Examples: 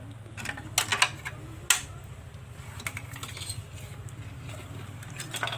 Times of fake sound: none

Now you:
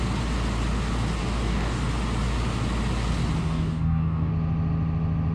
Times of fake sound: 1.2-1.8 (codec, DAC); 3.4-4.3

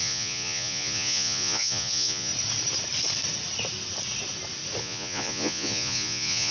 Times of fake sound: 0.0-2.3 (vocoder, Vocos); 4.8-6.5

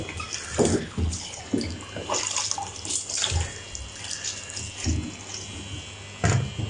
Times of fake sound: 0.7-1.4 (codec, HILCodec)

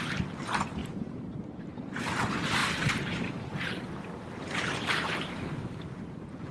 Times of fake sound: 0.8-2.2 (vocoder, BigVGAN v2); 2.6-6.5

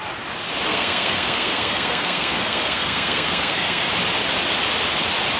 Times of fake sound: 0.7-3.9 (codec, SNAC)